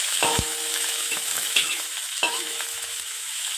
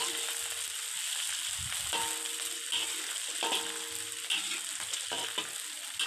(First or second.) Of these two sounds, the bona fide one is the second